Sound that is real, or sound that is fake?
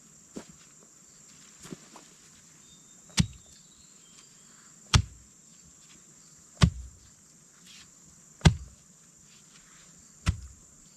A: real